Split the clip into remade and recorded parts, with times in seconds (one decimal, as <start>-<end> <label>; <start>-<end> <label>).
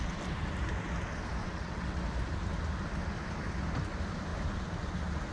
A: 0.0-1.4 recorded; 1.4-2.0 remade; 2.0-5.3 recorded